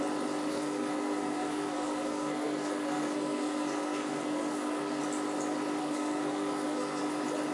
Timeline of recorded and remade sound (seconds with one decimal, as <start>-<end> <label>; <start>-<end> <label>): 0.0-0.5 recorded; 0.5-5.0 remade; 5.0-5.8 recorded; 5.8-7.0 remade; 7.0-7.5 recorded